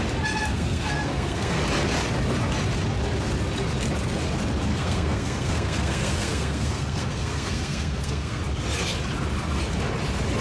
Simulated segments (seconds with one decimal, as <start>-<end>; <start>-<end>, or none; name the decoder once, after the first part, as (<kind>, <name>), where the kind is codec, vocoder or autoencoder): 0.5-1.6 (codec, SNAC); 4.7-8.4